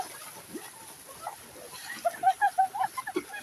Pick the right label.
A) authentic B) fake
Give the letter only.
A